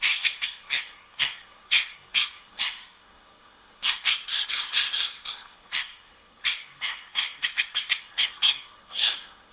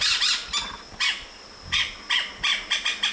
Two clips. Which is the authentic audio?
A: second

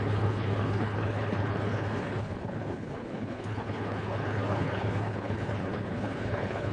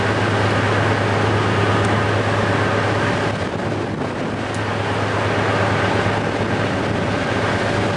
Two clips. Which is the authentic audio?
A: second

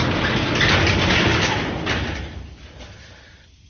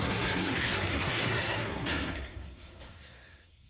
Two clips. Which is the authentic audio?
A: first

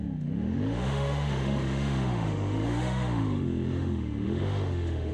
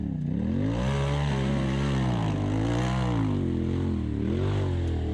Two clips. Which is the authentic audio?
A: second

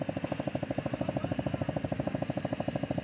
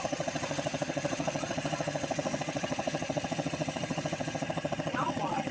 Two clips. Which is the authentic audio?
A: first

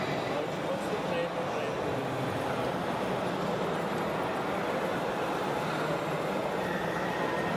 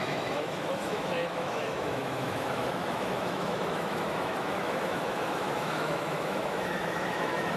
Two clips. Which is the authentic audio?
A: first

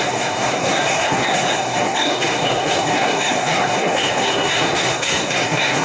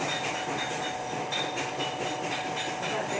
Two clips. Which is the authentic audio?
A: second